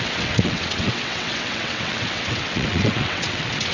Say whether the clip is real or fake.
fake